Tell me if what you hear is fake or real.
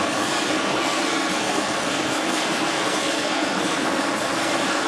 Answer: fake